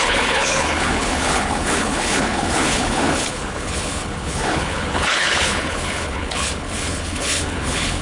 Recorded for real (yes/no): no